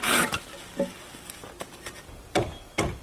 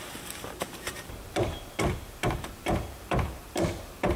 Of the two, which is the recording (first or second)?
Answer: first